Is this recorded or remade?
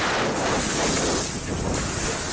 recorded